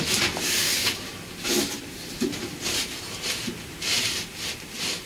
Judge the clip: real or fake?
fake